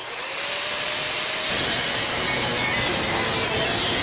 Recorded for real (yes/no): no